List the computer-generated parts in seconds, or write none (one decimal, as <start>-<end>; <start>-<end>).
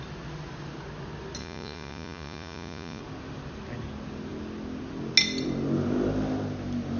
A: 1.4-3.0